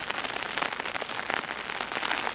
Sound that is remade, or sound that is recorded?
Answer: recorded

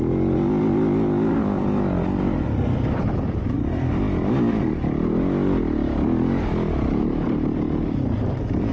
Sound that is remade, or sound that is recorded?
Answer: remade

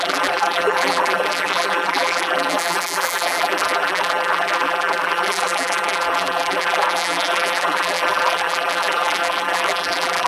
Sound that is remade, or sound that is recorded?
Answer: remade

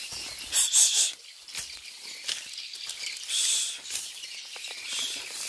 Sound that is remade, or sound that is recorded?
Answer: recorded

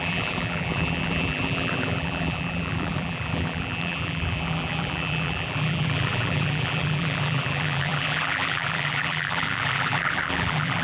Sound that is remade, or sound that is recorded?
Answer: remade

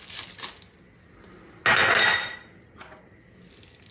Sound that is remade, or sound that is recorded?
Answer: recorded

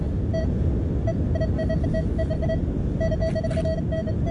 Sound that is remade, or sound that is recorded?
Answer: recorded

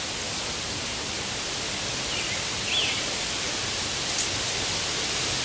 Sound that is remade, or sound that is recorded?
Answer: recorded